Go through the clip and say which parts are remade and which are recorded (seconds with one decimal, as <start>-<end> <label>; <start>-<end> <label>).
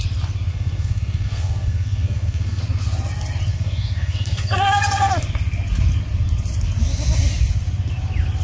0.0-0.5 recorded; 0.5-2.6 remade; 2.6-3.5 recorded; 3.5-5.1 remade; 5.1-8.4 recorded